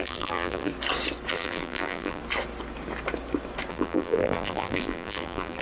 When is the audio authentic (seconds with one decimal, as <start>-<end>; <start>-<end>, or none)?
0.7-1.3; 2.2-3.7